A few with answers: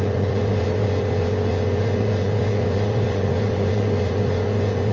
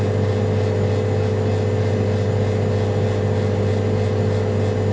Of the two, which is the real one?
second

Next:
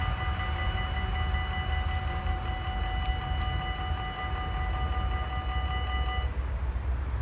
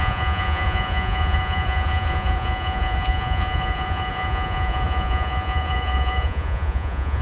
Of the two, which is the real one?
first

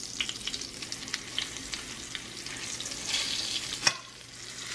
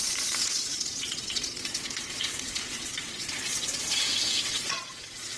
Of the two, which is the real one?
first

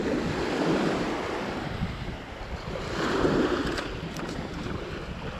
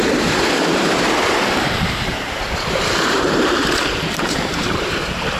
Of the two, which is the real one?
first